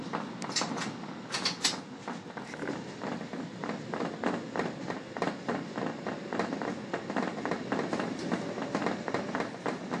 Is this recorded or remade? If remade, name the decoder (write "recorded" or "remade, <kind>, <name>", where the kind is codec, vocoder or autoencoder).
recorded